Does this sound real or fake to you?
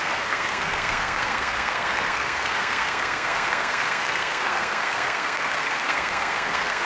fake